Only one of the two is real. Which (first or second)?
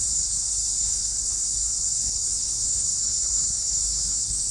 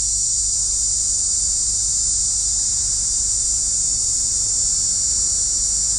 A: second